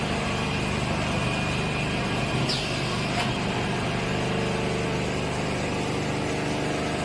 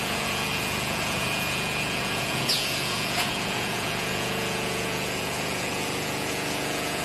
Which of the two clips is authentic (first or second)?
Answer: first